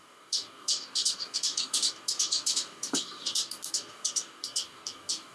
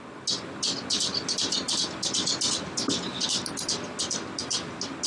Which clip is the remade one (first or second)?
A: first